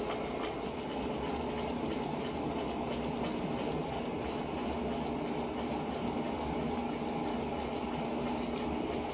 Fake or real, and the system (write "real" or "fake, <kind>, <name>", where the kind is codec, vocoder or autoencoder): real